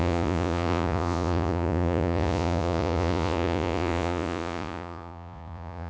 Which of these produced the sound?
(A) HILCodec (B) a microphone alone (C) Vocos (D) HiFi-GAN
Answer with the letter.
C